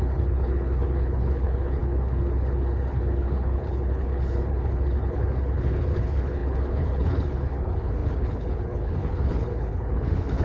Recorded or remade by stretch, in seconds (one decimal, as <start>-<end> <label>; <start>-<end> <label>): 0.0-10.4 remade